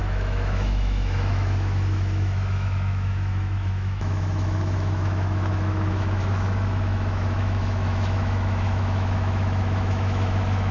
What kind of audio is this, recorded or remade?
remade